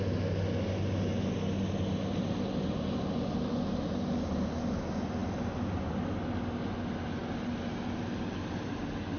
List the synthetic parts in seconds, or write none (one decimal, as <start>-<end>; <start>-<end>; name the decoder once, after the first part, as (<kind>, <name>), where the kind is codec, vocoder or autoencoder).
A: none